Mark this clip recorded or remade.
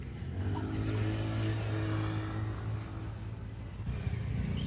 recorded